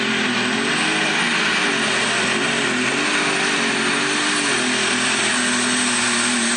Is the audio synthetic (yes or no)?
no